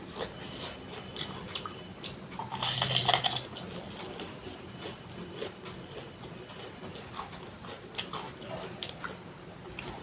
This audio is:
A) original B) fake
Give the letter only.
A